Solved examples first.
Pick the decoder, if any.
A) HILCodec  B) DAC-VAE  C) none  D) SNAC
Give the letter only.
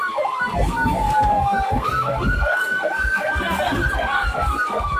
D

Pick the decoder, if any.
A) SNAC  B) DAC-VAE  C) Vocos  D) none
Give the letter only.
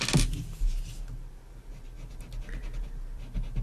D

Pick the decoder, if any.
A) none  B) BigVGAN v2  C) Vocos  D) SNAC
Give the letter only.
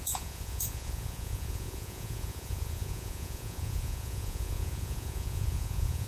C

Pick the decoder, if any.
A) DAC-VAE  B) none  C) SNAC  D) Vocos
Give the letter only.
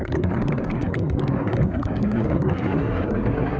C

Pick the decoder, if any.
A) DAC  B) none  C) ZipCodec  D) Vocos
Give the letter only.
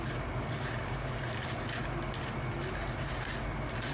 B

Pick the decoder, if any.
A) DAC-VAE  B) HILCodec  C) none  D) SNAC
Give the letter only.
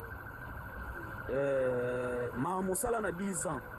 B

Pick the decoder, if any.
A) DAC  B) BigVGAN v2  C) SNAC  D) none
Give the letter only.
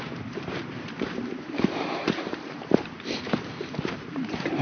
B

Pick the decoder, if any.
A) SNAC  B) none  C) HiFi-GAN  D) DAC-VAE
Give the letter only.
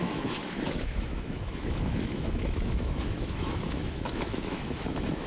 D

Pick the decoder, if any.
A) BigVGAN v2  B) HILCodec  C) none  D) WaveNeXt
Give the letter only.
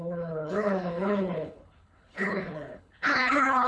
B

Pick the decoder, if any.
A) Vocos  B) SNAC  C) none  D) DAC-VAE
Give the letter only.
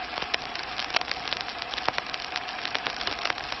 C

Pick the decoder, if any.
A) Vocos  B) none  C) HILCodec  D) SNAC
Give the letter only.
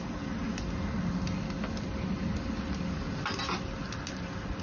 B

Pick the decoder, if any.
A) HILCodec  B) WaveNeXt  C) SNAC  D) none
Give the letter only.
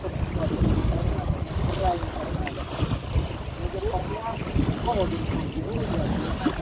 D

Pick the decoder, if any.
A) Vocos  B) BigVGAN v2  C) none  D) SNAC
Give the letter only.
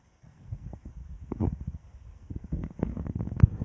D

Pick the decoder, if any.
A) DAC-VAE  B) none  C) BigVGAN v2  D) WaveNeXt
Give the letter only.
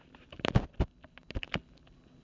B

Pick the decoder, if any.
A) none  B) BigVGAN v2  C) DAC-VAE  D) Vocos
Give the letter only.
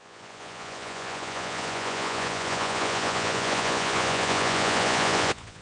D